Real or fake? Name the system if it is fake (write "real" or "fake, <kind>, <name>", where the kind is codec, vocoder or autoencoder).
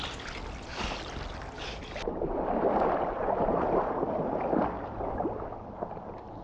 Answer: real